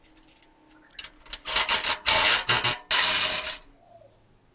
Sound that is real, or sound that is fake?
real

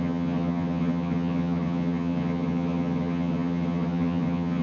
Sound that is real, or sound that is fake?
fake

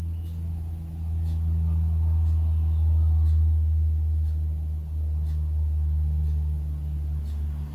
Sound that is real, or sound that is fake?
real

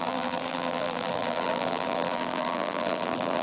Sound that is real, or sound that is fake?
fake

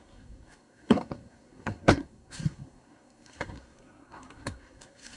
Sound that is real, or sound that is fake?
fake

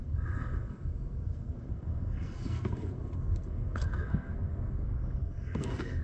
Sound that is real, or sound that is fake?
fake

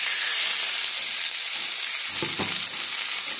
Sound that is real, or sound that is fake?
real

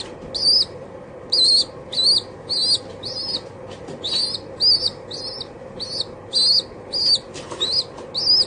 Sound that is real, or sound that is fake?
real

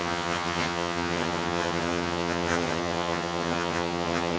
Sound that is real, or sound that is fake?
fake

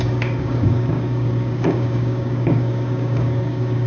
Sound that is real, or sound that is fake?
fake